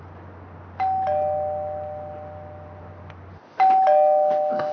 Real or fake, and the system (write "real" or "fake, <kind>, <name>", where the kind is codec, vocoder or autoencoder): real